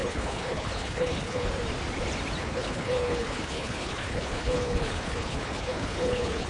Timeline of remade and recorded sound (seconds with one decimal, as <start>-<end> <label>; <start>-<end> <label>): 0.0-1.5 remade; 1.5-2.4 recorded; 2.4-6.5 remade